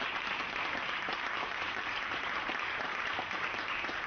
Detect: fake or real fake